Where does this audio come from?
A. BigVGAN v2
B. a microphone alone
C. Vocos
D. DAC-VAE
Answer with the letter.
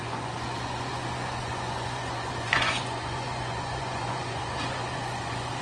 C